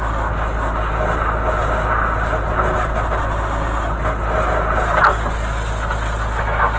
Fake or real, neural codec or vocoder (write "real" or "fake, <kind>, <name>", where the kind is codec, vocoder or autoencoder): real